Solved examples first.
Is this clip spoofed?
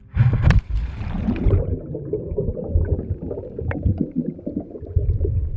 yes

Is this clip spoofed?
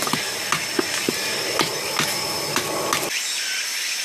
no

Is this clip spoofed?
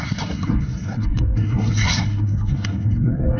yes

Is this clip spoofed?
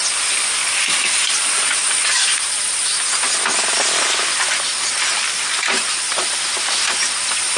no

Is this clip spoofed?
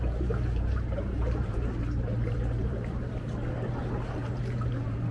yes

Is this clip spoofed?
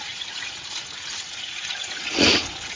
yes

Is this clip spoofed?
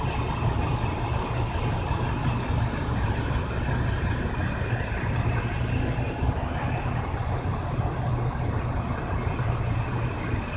no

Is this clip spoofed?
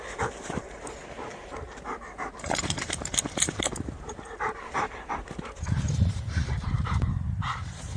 yes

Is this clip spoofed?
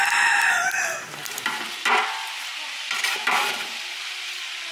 yes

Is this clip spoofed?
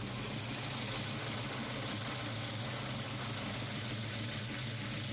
no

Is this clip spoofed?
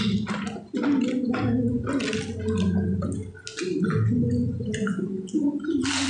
no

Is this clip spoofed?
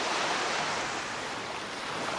no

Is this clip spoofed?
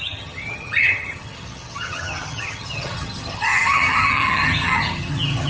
yes